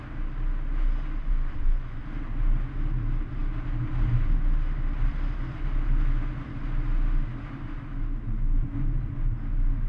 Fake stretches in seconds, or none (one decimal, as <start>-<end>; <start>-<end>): 1.2-2.0